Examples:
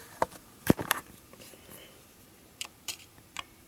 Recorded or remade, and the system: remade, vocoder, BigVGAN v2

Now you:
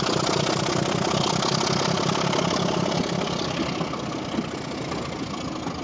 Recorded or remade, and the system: recorded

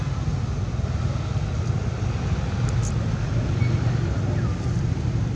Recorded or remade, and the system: recorded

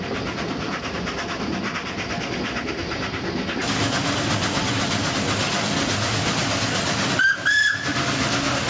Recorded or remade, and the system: recorded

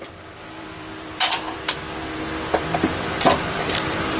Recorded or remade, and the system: remade, vocoder, BigVGAN v2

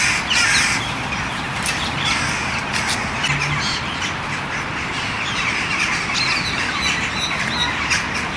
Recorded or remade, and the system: recorded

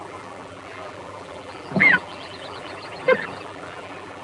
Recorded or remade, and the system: remade, vocoder, BigVGAN v2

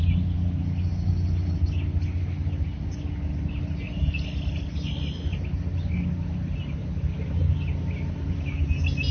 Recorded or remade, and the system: recorded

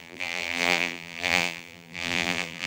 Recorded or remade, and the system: remade, vocoder, BigVGAN v2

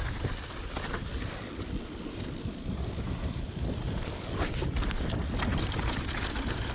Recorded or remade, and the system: remade, vocoder, BigVGAN v2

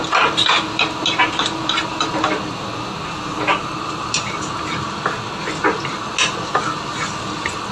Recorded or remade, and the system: recorded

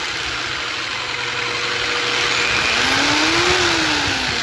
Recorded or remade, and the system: recorded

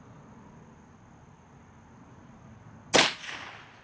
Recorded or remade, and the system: recorded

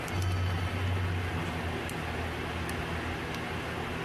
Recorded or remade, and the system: recorded